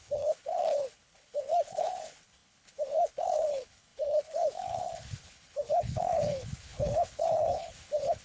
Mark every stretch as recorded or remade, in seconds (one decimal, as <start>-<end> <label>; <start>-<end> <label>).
0.0-8.2 remade